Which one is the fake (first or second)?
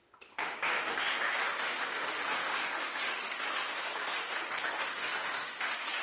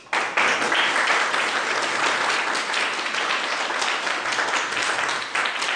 first